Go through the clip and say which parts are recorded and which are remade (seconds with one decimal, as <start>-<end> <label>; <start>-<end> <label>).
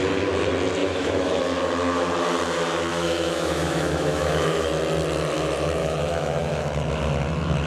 0.0-0.8 recorded; 0.8-1.4 remade; 1.4-2.9 recorded; 2.9-4.7 remade; 4.7-5.8 recorded; 5.8-6.6 remade; 6.6-7.7 recorded